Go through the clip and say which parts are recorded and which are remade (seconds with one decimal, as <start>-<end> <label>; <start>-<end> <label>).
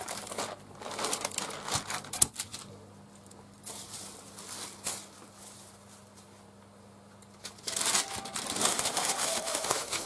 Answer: 0.0-8.7 recorded; 8.7-10.1 remade